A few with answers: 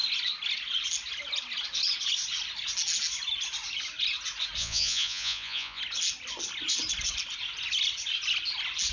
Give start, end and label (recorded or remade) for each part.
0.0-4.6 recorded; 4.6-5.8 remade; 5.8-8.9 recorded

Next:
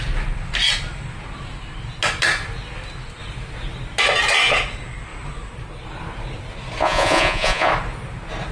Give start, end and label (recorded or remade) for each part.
0.0-6.8 recorded; 6.8-7.7 remade; 7.7-8.5 recorded

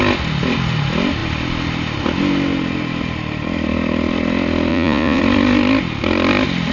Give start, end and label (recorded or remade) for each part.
0.0-4.7 recorded; 4.7-5.2 remade; 5.2-6.7 recorded